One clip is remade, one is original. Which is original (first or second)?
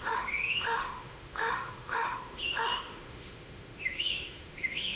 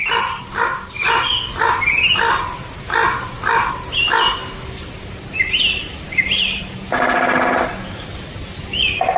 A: second